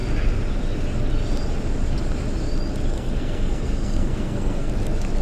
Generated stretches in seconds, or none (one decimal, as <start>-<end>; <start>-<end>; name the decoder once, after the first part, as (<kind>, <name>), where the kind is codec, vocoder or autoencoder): 2.9-4.7 (codec, SNAC)